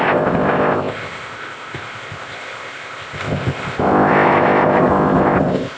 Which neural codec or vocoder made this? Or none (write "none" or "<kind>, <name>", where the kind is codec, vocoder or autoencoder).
codec, ZipCodec